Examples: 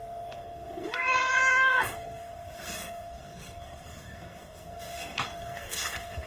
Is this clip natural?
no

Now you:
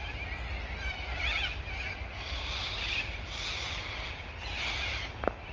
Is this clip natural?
yes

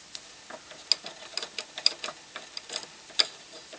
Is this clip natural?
yes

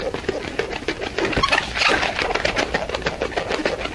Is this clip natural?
yes